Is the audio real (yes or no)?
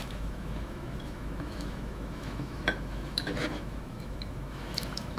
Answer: no